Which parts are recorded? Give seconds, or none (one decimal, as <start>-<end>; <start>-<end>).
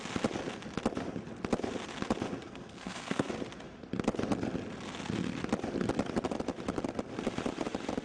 0.0-2.4; 3.3-8.0